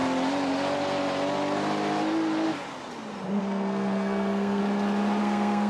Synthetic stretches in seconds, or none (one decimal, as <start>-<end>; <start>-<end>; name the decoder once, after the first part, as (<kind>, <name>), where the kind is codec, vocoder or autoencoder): 3.4-4.6 (codec, SNAC); 5.2-5.7